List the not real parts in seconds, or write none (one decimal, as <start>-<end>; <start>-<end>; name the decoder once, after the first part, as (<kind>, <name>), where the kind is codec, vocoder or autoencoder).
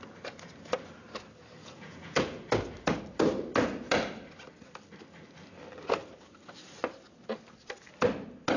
1.6-2.5 (vocoder, Vocos)